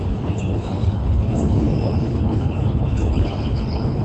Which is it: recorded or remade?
remade